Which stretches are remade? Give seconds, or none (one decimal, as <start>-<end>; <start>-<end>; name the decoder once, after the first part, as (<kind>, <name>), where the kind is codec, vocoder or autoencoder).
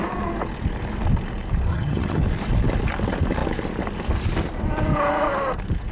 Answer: 1.7-2.2 (vocoder, HiFi-GAN)